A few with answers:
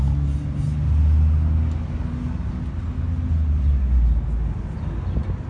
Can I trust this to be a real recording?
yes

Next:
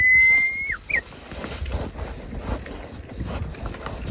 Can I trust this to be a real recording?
yes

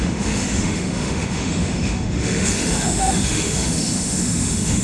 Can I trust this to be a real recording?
no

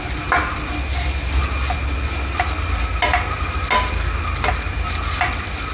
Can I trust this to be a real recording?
yes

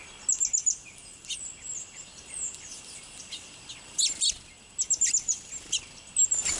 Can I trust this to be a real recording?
yes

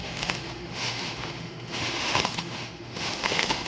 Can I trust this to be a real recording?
no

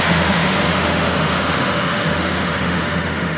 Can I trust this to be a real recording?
no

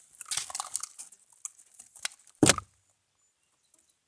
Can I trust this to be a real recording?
yes